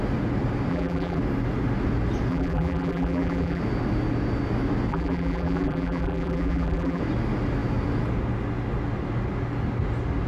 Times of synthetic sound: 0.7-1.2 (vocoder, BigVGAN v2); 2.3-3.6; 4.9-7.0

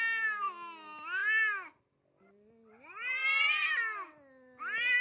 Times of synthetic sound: none

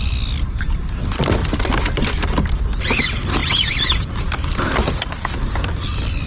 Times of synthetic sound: 3.4-5.3 (vocoder, BigVGAN v2)

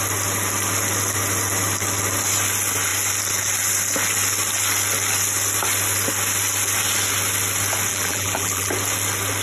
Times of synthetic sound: 7.9-8.7 (vocoder, BigVGAN v2)